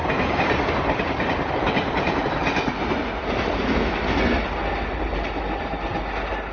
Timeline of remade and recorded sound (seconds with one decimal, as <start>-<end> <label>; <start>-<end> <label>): 0.0-6.5 recorded